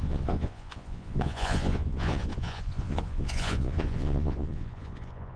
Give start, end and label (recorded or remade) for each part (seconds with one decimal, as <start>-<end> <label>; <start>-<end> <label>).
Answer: 0.0-5.4 remade